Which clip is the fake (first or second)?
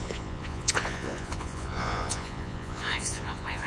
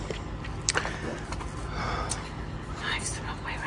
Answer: first